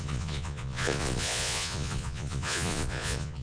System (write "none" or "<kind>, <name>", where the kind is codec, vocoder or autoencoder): vocoder, Vocos